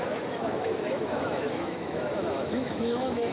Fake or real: fake